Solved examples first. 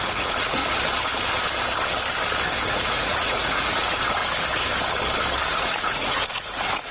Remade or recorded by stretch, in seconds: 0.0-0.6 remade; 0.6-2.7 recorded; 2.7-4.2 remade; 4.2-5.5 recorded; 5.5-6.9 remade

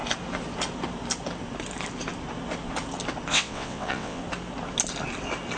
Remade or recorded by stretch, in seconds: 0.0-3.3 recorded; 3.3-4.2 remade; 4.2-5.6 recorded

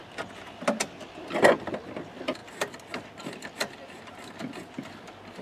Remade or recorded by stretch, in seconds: 0.0-5.4 recorded